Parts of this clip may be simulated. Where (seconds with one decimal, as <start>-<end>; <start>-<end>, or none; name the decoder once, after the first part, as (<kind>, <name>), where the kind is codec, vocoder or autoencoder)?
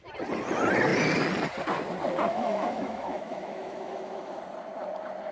2.3-4.4 (autoencoder, DAC-VAE)